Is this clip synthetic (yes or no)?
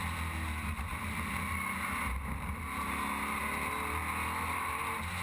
no